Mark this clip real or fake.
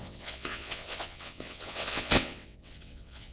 fake